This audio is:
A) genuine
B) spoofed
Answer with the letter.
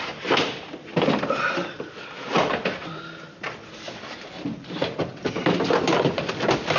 B